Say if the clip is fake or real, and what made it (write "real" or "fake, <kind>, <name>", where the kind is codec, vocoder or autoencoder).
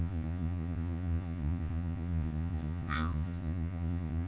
fake, vocoder, Vocos